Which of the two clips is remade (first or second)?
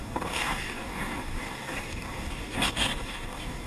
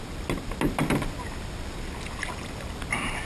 first